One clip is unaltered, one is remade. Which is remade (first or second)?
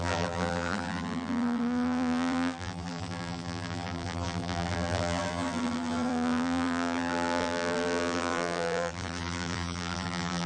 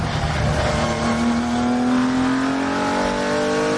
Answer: first